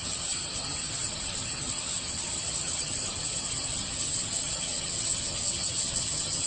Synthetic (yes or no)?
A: yes